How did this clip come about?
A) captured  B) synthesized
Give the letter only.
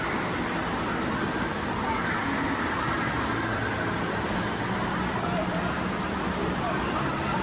A